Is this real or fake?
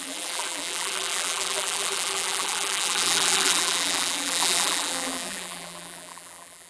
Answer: fake